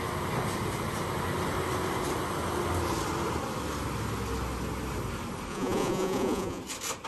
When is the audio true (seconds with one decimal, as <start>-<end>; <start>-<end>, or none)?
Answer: 0.0-5.5; 6.6-7.1